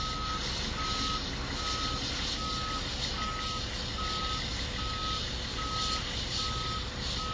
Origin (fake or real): real